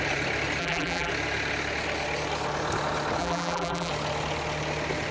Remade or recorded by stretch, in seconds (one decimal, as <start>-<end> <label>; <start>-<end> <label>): 0.0-0.6 recorded; 0.6-1.1 remade; 1.1-3.2 recorded; 3.2-3.9 remade; 3.9-5.1 recorded